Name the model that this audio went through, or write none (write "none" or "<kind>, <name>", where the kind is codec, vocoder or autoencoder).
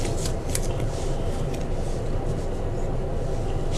none